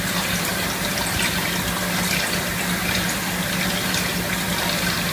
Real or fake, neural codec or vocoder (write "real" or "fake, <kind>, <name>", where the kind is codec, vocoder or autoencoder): real